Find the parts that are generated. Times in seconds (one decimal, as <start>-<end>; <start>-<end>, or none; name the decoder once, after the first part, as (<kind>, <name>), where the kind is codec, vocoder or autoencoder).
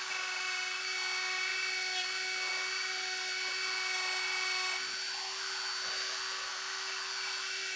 none